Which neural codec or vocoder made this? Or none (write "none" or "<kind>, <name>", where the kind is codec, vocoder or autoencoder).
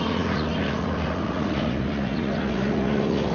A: vocoder, Vocos